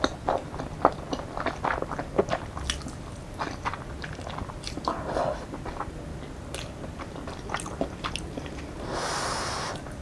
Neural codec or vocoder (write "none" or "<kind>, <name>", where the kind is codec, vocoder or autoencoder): none